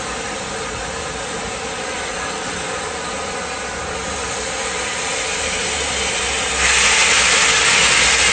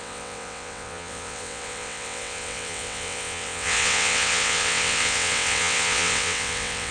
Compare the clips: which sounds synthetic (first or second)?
second